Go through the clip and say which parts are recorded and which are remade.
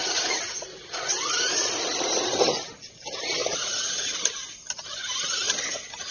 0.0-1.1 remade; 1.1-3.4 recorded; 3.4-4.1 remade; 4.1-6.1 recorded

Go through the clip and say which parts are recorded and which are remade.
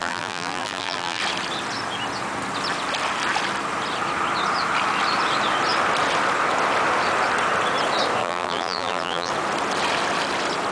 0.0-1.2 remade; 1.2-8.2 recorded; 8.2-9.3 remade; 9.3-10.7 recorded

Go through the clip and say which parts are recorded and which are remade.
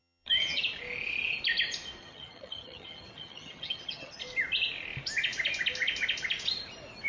0.0-0.6 remade; 0.6-2.0 recorded; 2.0-4.2 remade; 4.2-7.1 recorded